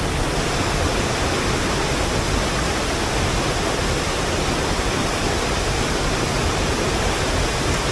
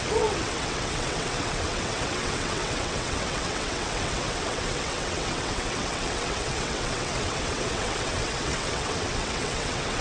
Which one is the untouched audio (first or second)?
first